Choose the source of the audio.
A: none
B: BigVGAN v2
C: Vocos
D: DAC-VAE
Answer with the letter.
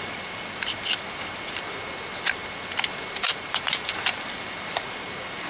B